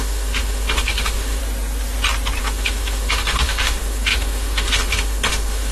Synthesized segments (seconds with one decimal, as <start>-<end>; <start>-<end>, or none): 0.0-1.4; 2.4-5.7